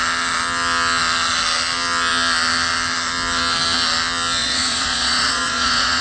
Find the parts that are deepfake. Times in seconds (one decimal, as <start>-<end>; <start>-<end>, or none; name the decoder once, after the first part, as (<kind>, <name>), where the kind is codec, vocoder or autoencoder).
4.4-6.0 (vocoder, Vocos)